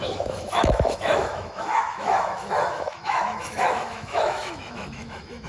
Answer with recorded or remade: remade